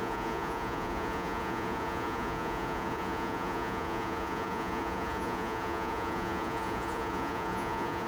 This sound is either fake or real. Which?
fake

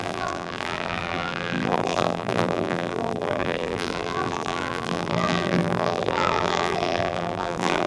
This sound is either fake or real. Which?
fake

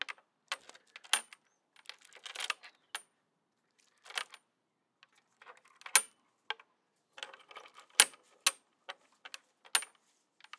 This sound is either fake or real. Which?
real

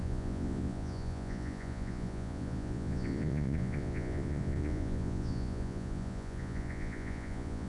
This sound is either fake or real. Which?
fake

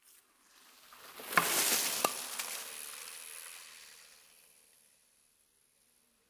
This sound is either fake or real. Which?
real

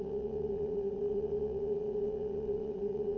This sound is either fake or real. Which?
fake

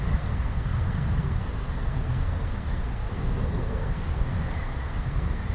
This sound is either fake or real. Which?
fake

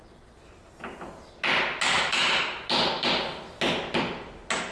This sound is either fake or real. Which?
real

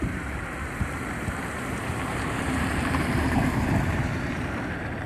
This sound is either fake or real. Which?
fake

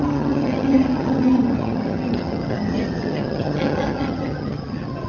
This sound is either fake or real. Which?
fake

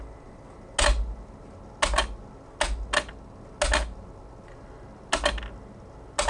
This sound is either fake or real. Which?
real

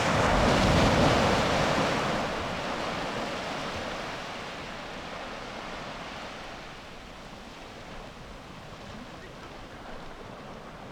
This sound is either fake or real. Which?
real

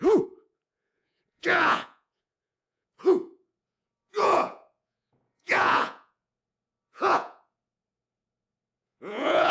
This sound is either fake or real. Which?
fake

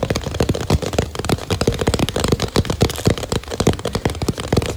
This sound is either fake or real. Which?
real